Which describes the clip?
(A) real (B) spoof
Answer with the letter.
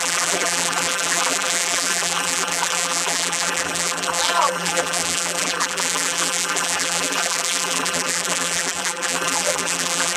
B